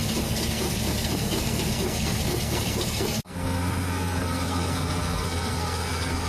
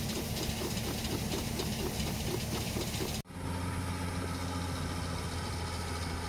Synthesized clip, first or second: first